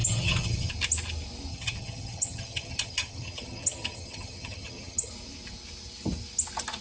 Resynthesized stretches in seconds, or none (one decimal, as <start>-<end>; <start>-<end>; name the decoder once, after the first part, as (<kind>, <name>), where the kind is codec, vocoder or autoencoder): 0.0-0.7 (vocoder, HiFi-GAN); 1.5-5.1